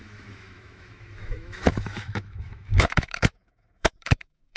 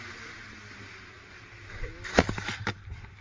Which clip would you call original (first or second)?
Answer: second